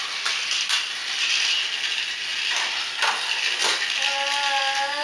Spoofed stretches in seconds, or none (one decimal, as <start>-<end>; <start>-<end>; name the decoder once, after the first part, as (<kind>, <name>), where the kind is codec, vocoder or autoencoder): 1.0-1.5 (vocoder, BigVGAN v2)